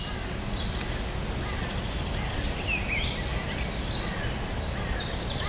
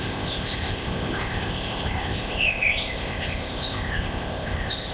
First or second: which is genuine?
first